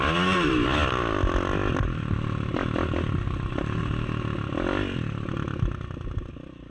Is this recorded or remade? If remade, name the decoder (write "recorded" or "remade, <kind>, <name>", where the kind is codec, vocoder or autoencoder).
recorded